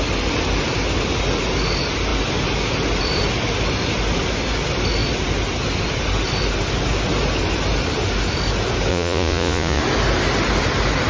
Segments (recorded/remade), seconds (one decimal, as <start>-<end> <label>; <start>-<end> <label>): 0.0-8.9 recorded; 8.9-9.8 remade; 9.8-11.1 recorded